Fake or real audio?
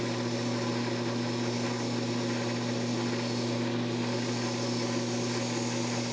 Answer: real